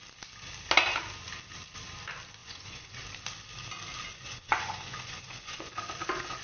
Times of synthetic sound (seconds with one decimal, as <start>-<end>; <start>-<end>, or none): 2.4-3.0; 4.1-5.7